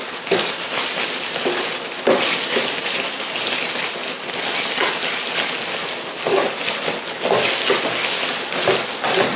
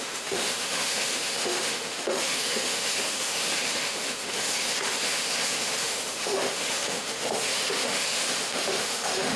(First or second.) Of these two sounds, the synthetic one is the second